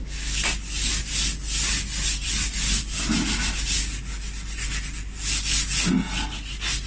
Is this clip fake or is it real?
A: real